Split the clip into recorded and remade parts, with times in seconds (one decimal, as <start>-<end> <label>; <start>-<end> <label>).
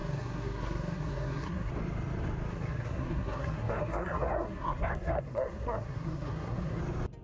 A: 0.0-1.7 remade; 1.7-2.5 recorded; 2.5-6.8 remade; 6.8-7.2 recorded